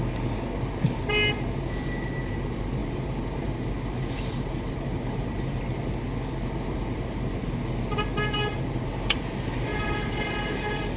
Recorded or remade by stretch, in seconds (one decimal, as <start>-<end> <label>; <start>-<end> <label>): 0.0-2.8 recorded; 2.8-5.6 remade; 5.6-9.7 recorded; 9.7-10.3 remade; 10.3-11.0 recorded